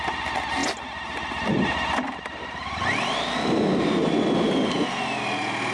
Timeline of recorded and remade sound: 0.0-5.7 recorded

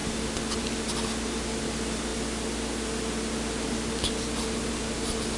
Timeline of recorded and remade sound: 0.0-5.4 recorded

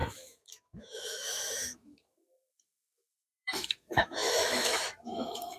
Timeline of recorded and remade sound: 0.0-5.6 remade

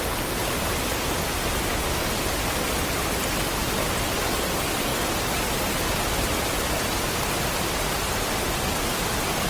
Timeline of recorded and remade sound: 0.0-9.5 recorded

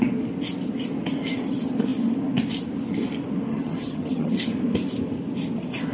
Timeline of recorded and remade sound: 0.0-3.5 recorded; 3.5-4.3 remade; 4.3-5.9 recorded

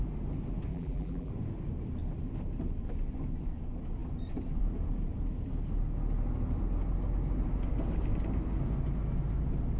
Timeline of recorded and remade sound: 0.0-0.7 recorded; 0.7-1.3 remade; 1.3-9.8 recorded

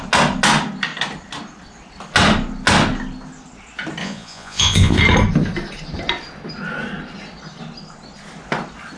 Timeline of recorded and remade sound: 0.0-4.0 recorded; 4.0-5.0 remade; 5.0-9.0 recorded